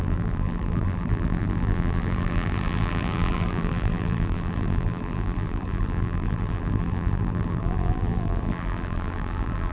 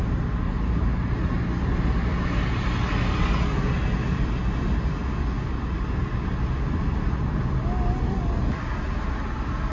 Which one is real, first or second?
second